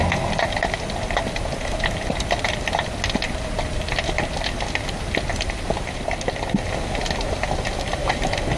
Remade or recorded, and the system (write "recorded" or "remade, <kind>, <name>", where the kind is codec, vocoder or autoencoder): recorded